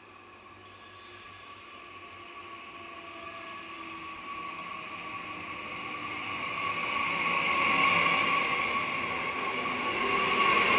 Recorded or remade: recorded